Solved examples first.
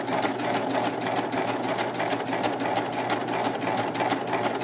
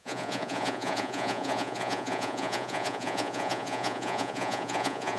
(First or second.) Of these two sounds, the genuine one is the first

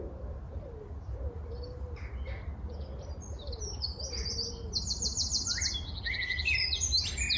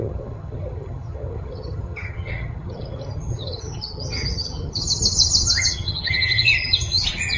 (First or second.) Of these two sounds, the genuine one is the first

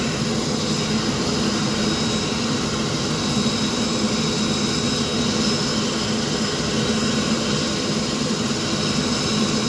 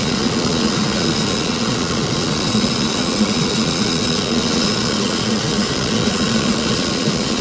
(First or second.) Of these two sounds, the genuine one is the first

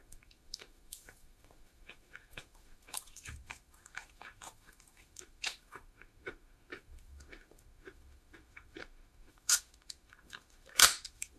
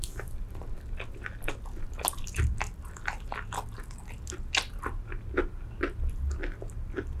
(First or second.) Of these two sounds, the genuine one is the second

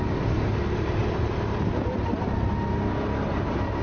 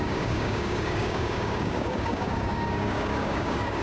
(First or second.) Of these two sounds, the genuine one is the first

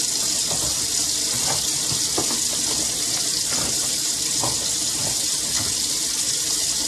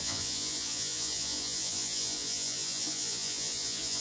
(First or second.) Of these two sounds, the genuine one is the first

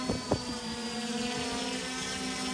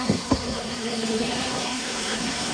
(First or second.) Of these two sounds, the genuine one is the first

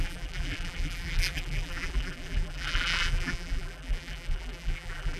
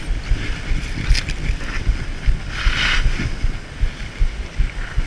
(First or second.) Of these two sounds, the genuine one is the second